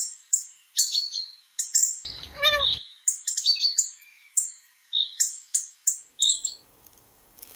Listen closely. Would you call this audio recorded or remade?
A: remade